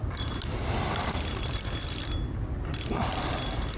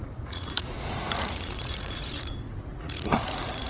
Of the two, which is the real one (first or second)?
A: first